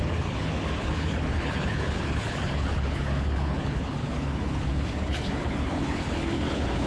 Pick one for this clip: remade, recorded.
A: remade